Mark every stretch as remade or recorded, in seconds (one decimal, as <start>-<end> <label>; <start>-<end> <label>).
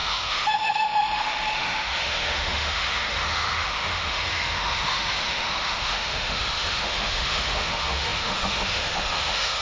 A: 0.0-9.6 remade